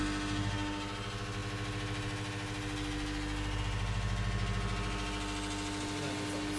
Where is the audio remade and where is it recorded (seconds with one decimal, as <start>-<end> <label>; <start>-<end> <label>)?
0.0-6.6 recorded